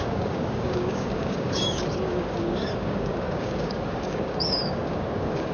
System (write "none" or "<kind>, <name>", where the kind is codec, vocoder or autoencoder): codec, DAC